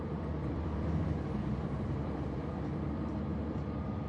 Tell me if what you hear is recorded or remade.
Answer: remade